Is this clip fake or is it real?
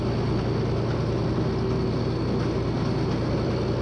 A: real